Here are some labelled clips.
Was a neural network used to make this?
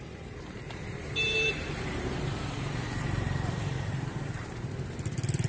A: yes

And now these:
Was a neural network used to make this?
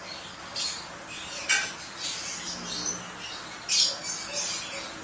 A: no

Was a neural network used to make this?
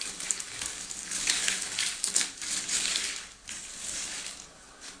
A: yes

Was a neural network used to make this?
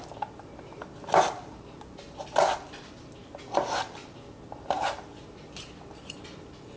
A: no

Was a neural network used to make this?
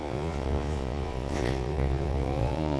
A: yes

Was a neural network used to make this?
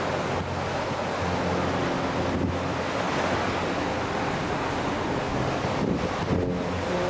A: no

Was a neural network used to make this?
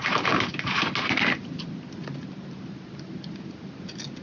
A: no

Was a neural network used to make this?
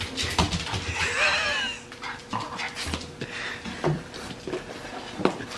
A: no